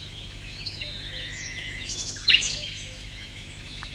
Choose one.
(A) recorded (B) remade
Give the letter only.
B